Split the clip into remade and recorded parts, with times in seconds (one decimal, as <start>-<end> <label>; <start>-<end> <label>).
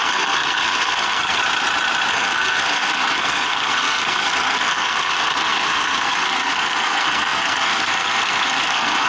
0.0-1.4 remade; 1.4-2.1 recorded; 2.1-9.1 remade